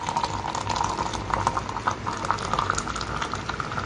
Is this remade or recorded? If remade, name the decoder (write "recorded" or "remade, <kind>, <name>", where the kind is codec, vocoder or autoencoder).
recorded